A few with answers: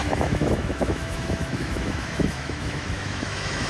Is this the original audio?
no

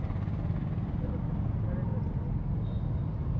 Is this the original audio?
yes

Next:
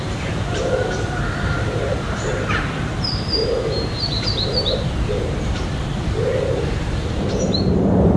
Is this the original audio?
no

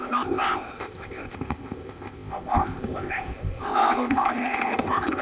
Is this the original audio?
no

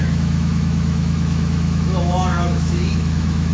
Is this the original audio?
no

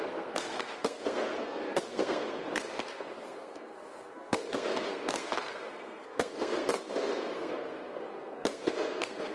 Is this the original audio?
no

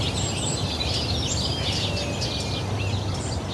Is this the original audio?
yes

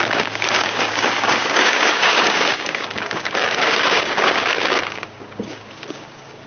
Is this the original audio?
no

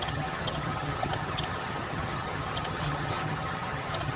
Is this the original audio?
no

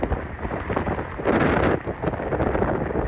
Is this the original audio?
yes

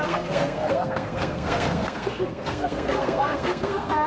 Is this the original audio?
no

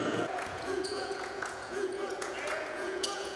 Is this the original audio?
no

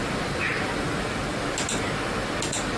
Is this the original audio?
yes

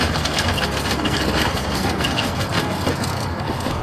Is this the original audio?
no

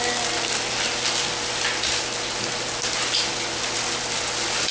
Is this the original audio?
yes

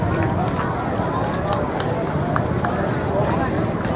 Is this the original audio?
yes